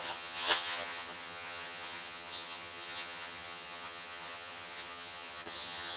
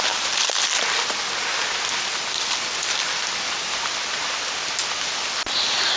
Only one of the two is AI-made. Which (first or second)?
first